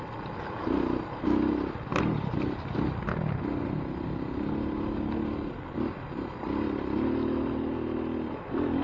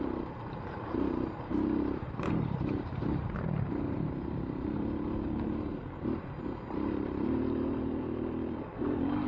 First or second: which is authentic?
first